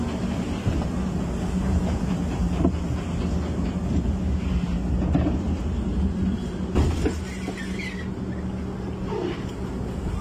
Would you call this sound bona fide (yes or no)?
yes